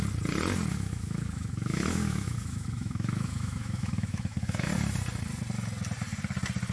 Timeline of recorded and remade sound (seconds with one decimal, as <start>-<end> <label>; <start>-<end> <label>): 0.0-0.7 recorded; 0.7-4.7 remade; 4.7-6.7 recorded